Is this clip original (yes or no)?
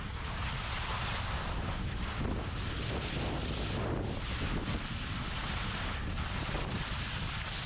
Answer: yes